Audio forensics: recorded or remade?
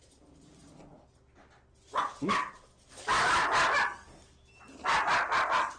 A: recorded